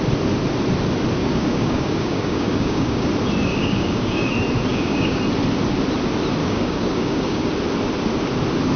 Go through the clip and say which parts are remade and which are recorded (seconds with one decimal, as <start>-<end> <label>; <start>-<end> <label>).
0.0-1.2 recorded; 1.2-3.1 remade; 3.1-3.5 recorded; 3.5-4.3 remade; 4.3-4.7 recorded; 4.7-5.2 remade; 5.2-6.4 recorded; 6.4-7.5 remade; 7.5-8.8 recorded